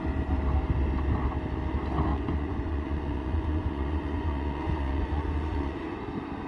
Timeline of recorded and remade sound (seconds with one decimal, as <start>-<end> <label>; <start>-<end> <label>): 0.0-2.1 recorded; 2.1-6.0 remade; 6.0-6.5 recorded